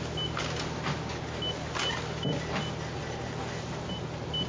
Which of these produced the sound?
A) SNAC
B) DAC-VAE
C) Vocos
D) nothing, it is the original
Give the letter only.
D